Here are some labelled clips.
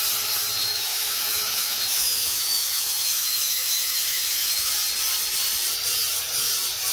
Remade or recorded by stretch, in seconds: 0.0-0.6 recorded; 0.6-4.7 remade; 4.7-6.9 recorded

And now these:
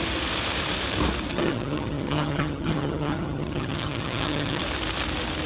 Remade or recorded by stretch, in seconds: 0.0-1.3 recorded; 1.3-4.6 remade; 4.6-5.5 recorded

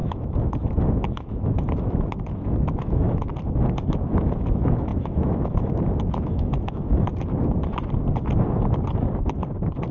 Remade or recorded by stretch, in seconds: 0.0-3.3 remade; 3.3-4.1 recorded; 4.1-7.1 remade; 7.1-9.9 recorded

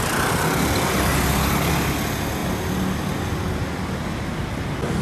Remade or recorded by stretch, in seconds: 0.0-5.0 recorded